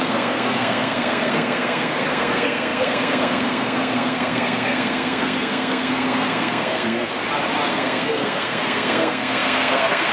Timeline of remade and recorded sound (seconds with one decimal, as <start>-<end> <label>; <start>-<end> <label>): 0.0-7.1 remade; 7.1-7.7 recorded; 7.7-10.1 remade

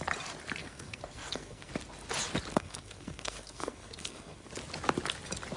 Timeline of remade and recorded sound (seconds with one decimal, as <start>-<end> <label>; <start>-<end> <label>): 0.0-0.6 recorded; 0.6-1.7 remade; 1.7-2.5 recorded; 2.5-4.5 remade; 4.5-5.6 recorded

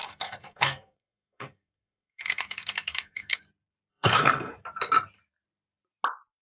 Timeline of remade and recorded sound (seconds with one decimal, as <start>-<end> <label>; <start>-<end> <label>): 0.0-3.4 remade; 3.4-3.9 recorded; 3.9-4.5 remade; 4.5-6.4 recorded

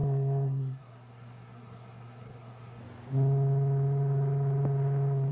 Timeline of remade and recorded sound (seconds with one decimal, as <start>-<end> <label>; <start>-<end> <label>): 0.0-2.8 remade; 2.8-5.3 recorded

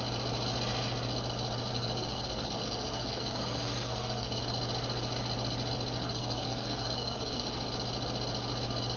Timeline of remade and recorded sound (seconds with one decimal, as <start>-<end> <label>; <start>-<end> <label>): 0.0-1.7 recorded; 1.7-4.4 remade; 4.4-6.0 recorded; 6.0-7.6 remade; 7.6-9.0 recorded

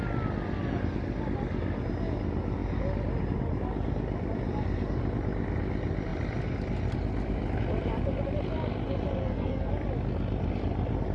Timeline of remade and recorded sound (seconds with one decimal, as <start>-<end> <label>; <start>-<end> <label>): 0.0-9.2 recorded; 9.2-9.7 remade; 9.7-11.1 recorded

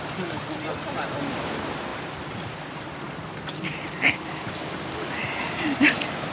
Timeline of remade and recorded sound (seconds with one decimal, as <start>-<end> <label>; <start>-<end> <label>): 0.0-6.3 recorded